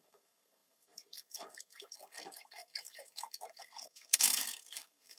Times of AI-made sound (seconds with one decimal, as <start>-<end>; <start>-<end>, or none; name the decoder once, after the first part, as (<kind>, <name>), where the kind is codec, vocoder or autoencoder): 0.0-5.2 (codec, SNAC)